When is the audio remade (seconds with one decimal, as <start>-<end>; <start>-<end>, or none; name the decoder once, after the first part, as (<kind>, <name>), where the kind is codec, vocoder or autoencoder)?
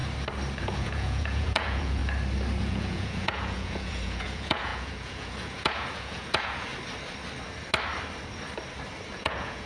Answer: 0.6-2.0 (vocoder, Vocos); 2.6-6.7; 9.1-9.7